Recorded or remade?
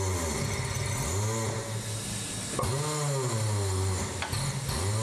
recorded